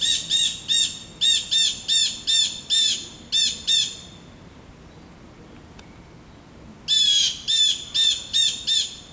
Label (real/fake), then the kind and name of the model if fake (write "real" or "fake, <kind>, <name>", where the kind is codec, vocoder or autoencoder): real